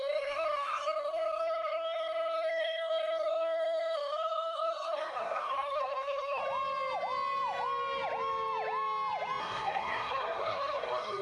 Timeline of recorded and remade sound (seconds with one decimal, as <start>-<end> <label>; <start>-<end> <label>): 0.0-6.4 remade; 6.4-9.4 recorded; 9.4-11.2 remade